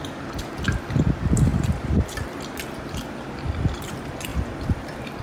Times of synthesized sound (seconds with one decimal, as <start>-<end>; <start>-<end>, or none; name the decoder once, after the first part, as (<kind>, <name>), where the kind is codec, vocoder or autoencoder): 0.0-5.2 (vocoder, BigVGAN v2)